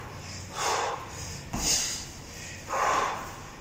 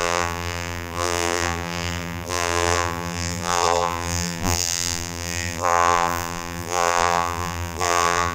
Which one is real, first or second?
first